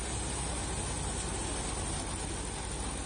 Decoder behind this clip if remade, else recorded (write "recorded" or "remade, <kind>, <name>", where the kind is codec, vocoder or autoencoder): recorded